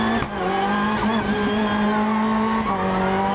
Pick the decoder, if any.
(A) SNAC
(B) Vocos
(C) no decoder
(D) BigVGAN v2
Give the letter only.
C